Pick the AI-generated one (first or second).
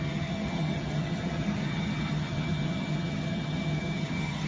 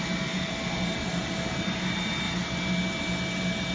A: first